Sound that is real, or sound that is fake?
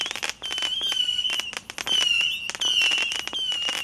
real